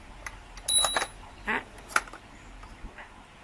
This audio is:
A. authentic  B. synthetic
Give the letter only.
A